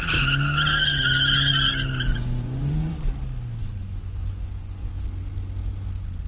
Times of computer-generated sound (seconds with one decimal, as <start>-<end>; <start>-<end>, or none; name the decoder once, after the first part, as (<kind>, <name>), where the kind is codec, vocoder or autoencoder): 2.1-3.1 (vocoder, Vocos); 3.6-4.9